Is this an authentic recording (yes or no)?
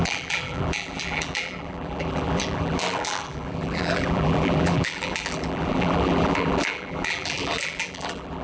no